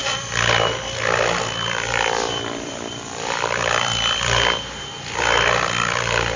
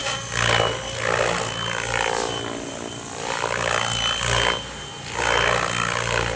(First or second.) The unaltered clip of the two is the second